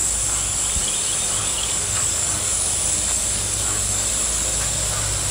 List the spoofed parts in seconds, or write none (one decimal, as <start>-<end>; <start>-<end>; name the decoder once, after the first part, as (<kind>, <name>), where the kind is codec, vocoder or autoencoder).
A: 0.0-0.7 (codec, DAC); 1.4-4.1